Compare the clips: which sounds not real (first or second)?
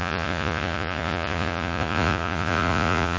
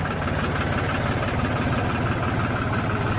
first